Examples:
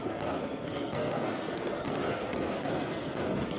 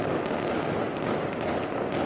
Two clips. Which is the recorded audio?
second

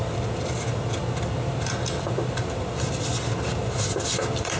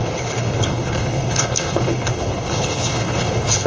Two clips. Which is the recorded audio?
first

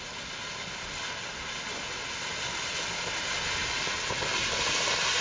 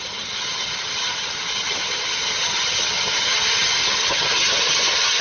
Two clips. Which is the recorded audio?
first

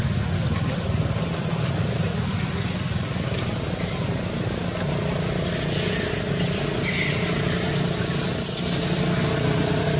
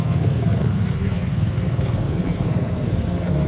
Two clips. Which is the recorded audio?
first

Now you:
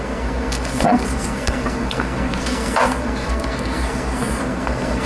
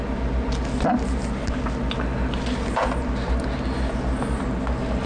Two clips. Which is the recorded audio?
second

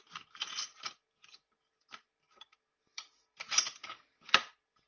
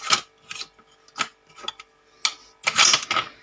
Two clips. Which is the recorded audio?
second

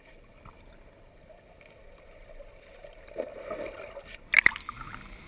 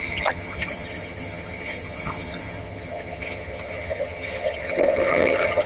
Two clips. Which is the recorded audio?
first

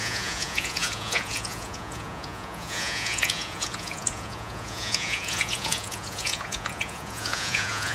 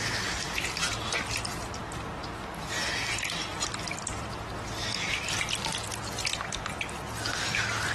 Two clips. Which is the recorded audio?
second